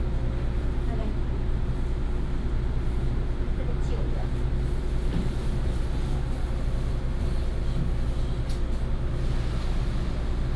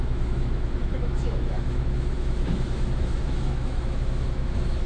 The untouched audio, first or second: first